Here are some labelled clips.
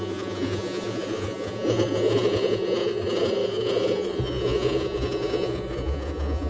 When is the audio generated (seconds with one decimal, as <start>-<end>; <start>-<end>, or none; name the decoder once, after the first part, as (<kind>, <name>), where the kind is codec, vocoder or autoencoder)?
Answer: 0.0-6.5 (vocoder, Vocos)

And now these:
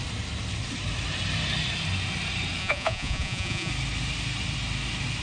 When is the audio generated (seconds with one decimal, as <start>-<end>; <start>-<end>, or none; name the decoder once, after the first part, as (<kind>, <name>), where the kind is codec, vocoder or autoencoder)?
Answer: 2.6-3.7 (vocoder, Vocos)

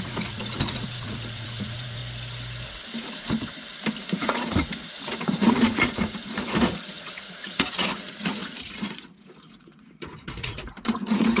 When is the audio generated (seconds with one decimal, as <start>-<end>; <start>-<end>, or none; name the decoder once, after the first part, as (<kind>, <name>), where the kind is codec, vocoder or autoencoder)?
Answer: 0.0-2.0 (vocoder, Vocos); 4.0-11.4